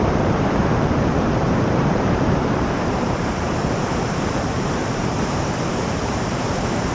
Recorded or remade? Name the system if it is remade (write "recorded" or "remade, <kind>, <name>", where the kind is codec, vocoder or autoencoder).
remade, vocoder, BigVGAN v2